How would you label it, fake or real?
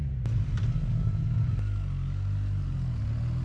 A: real